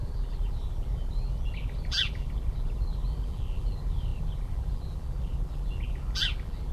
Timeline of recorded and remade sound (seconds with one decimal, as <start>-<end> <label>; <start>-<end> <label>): 0.0-6.7 remade